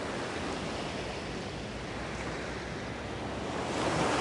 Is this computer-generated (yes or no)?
no